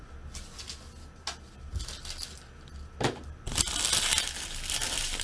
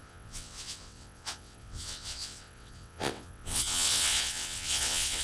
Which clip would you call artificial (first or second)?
second